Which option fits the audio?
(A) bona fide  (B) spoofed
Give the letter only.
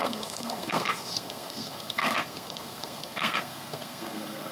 B